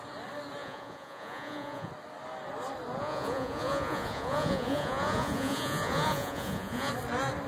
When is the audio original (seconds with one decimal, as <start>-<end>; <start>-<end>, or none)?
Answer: 0.0-0.6; 1.9-3.0; 6.9-7.5